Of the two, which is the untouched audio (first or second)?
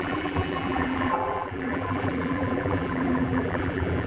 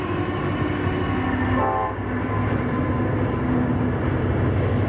second